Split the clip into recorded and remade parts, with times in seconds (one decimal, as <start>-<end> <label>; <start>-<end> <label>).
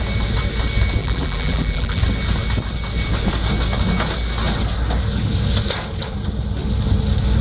0.0-1.0 recorded; 1.0-2.0 remade; 2.0-7.4 recorded